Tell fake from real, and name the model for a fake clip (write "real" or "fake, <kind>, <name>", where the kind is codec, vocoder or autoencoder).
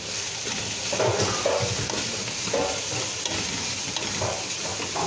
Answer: real